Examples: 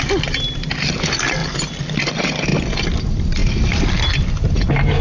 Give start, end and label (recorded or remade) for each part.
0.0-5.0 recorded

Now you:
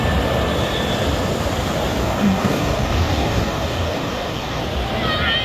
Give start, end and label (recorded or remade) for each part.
0.0-2.0 recorded; 2.0-4.6 remade; 4.6-5.4 recorded

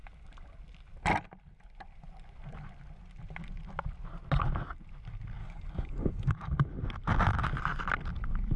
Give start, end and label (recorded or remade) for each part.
0.0-5.4 recorded; 5.4-6.7 remade; 6.7-8.6 recorded

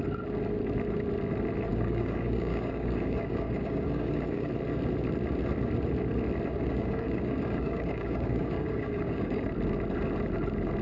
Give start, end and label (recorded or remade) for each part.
0.0-1.7 recorded; 1.7-4.5 remade; 4.5-6.5 recorded; 6.5-9.4 remade; 9.4-10.8 recorded

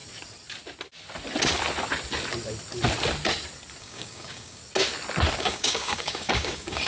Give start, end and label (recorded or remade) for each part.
0.0-3.8 recorded; 3.8-4.6 remade; 4.6-5.4 recorded; 5.4-6.9 remade

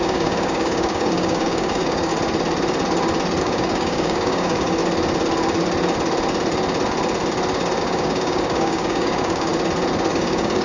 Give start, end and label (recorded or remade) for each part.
0.0-2.1 remade; 2.1-3.4 recorded; 3.4-4.8 remade; 4.8-7.8 recorded; 7.8-9.5 remade; 9.5-10.1 recorded; 10.1-10.6 remade